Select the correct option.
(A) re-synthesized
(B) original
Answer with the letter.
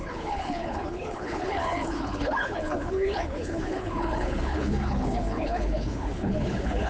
A